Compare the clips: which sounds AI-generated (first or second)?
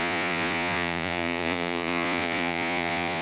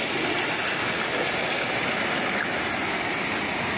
first